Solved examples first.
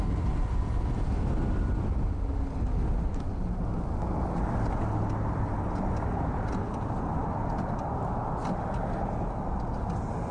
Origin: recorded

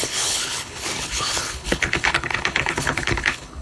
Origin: remade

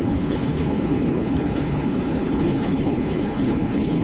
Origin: remade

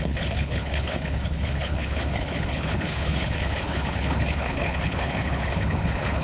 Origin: remade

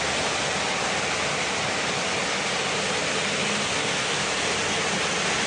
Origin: recorded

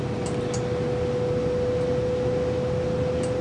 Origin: recorded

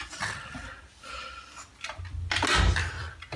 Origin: recorded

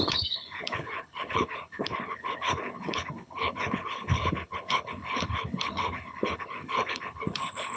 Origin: remade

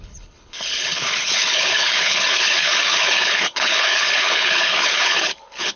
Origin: remade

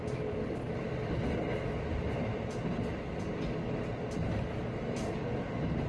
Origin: recorded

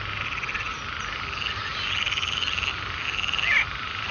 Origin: recorded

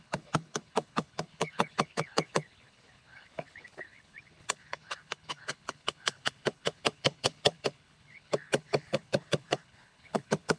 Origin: remade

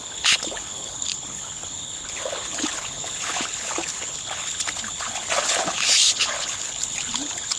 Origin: remade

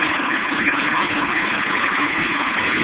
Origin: remade